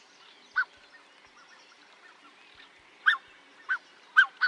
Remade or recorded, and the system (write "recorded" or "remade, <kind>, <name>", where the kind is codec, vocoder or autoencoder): recorded